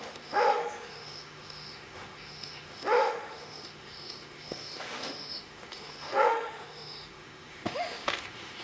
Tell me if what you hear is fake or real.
fake